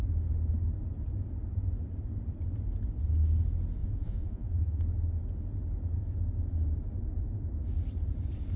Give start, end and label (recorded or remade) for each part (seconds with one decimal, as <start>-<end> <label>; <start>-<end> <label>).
0.0-3.8 recorded; 3.8-4.8 remade; 4.8-8.6 recorded